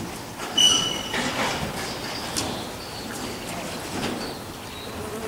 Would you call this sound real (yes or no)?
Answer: yes